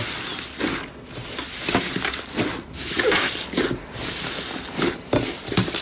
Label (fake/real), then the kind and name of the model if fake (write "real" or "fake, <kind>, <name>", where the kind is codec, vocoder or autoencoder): real